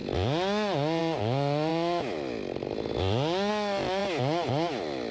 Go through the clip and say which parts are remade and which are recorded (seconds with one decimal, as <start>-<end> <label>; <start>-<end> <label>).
0.0-5.1 recorded